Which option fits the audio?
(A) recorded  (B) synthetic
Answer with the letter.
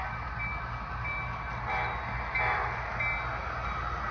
A